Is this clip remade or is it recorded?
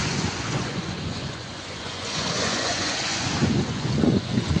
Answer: remade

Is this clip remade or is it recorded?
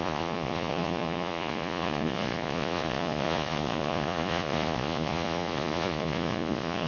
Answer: remade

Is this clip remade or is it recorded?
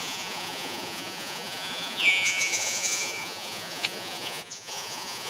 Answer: remade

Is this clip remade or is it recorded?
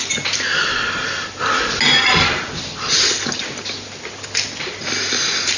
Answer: recorded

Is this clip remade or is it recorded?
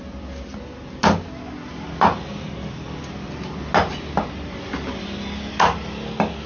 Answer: recorded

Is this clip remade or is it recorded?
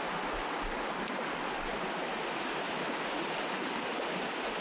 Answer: recorded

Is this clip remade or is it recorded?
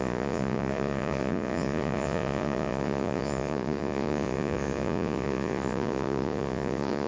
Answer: remade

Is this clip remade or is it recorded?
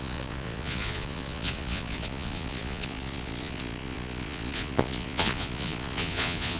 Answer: remade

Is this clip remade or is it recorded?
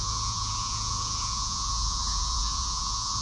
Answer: remade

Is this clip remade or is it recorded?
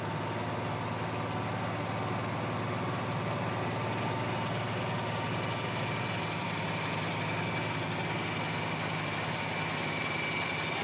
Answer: recorded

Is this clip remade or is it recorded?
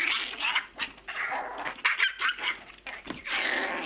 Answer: recorded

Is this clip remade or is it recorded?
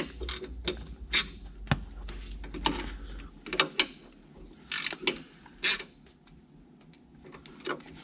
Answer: recorded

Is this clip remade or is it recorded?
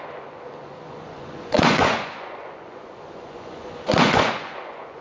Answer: remade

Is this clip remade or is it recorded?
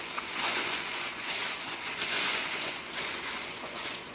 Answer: remade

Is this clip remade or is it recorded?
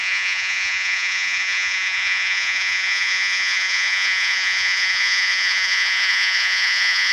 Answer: remade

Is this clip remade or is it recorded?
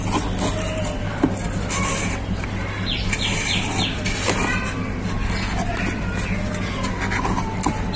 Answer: recorded